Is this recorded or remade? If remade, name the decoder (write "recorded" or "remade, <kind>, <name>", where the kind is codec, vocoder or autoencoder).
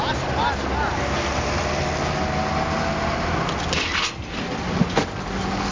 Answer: recorded